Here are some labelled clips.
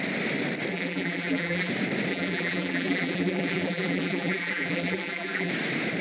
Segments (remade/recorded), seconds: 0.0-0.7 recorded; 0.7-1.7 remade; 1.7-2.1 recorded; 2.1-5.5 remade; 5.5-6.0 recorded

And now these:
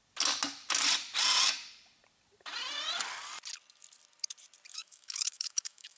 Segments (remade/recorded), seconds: 0.0-4.7 recorded; 4.7-6.0 remade